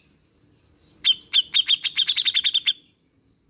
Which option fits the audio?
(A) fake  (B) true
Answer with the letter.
B